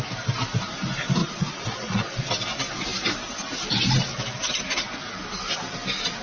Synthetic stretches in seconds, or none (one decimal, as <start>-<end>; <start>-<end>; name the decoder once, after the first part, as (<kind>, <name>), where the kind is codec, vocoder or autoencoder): 1.2-2.3 (vocoder, Vocos)